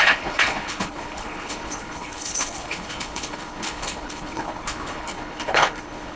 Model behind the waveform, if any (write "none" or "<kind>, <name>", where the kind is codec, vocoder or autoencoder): codec, HILCodec